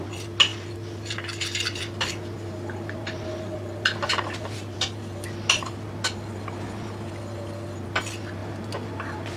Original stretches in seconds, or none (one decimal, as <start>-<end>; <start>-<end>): 0.0-9.4